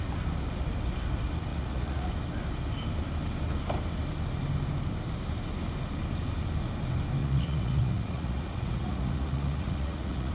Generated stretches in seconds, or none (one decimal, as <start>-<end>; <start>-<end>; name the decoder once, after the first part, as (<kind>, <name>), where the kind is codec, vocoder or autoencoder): 1.5-2.1 (vocoder, Vocos); 7.2-10.3